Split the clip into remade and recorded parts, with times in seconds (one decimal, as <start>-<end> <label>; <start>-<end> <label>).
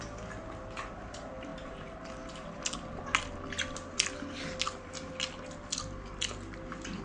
0.0-7.0 recorded